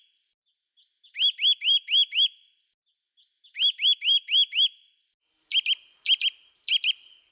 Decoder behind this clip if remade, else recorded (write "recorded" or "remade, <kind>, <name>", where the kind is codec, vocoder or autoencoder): recorded